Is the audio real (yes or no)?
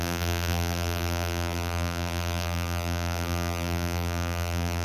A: no